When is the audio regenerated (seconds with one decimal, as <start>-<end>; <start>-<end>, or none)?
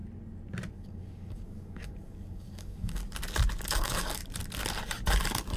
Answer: 0.7-3.0; 3.6-4.2